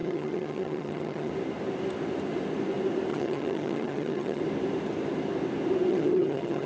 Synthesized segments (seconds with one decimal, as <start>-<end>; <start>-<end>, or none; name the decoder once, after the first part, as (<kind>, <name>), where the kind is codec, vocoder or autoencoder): 0.0-1.3 (vocoder, HiFi-GAN); 3.1-4.4; 5.9-6.7